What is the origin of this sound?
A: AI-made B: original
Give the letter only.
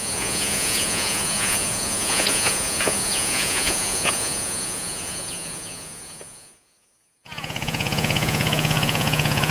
A